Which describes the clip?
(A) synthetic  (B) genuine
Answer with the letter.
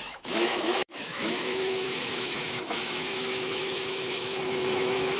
A